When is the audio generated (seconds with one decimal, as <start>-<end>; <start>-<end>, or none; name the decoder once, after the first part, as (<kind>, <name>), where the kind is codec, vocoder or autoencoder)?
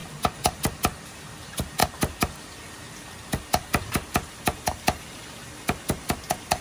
0.0-0.6 (vocoder, BigVGAN v2)